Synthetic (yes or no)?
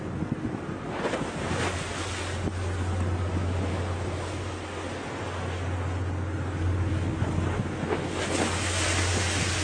no